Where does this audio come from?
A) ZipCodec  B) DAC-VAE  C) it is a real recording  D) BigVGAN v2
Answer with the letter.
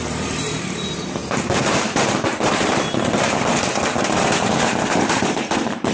D